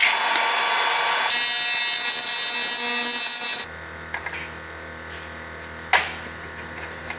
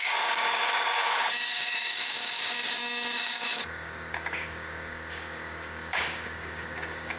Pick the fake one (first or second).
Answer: second